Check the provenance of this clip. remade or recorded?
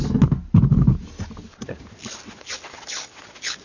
recorded